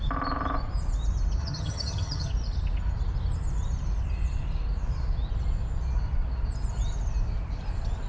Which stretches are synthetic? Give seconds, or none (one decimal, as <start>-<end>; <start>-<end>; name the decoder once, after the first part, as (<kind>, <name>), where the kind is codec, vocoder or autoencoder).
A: 1.4-2.3 (vocoder, HiFi-GAN)